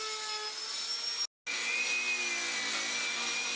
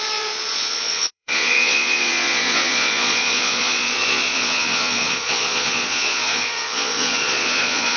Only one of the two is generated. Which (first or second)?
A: second